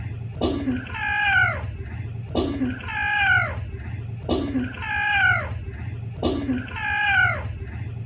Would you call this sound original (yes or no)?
yes